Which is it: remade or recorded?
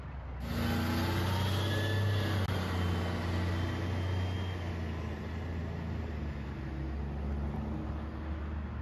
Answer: recorded